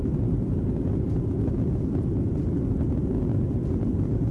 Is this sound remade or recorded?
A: recorded